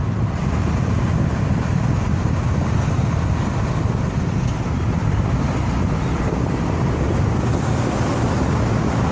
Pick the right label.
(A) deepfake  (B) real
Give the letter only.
B